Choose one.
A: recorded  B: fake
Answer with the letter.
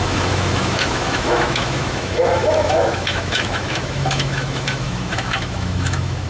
B